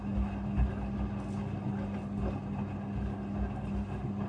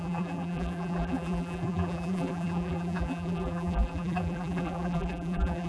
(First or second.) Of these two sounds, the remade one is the second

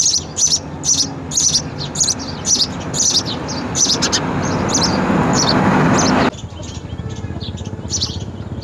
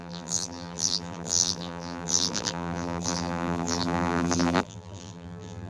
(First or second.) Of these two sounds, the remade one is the second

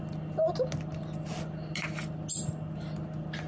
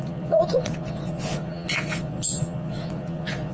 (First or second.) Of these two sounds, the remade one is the second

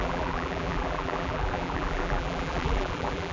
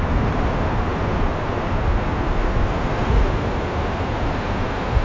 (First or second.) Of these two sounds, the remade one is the first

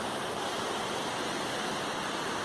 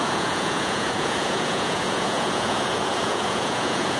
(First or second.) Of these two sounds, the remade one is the second